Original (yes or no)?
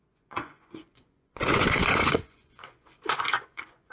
no